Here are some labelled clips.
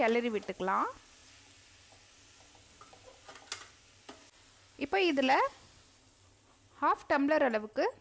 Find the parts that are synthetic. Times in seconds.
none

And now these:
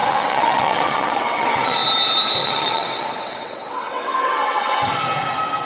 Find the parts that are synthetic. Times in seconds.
0.0-1.8 (vocoder, WaveNeXt); 2.4-4.9

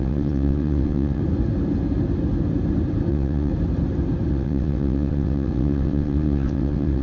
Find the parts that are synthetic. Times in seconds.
0.0-1.2 (vocoder, WaveNeXt); 3.1-3.5; 4.3-7.0